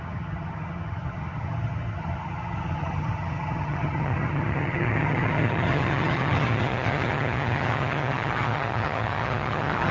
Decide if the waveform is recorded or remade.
remade